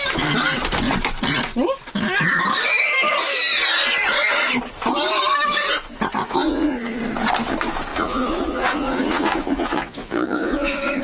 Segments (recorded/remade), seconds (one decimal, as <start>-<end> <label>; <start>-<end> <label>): 0.0-6.2 recorded; 6.2-7.0 remade; 7.0-7.9 recorded; 7.9-11.0 remade